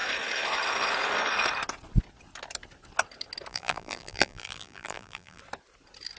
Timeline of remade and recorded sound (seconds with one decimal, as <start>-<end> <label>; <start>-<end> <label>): 0.0-3.5 recorded; 3.5-5.4 remade; 5.4-6.2 recorded